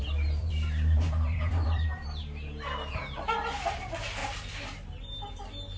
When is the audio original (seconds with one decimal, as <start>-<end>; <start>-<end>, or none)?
2.2-2.9; 4.2-5.8